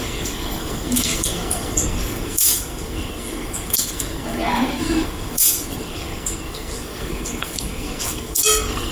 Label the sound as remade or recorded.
remade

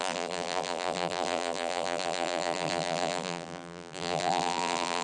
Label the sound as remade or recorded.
remade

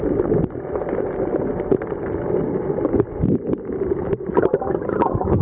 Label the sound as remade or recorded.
recorded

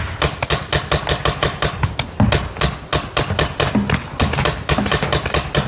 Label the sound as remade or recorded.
recorded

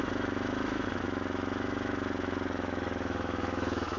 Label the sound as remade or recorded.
remade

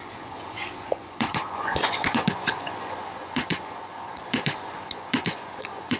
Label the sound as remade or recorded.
remade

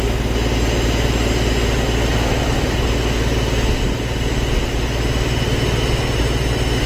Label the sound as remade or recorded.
recorded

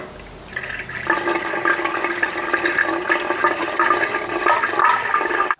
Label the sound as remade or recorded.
recorded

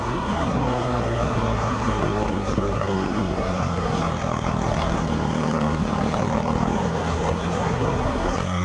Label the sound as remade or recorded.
remade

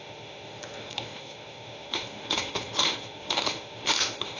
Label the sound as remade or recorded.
remade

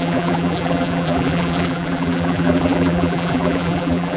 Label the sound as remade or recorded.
remade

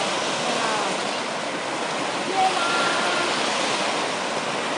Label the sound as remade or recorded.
recorded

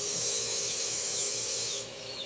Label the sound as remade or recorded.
remade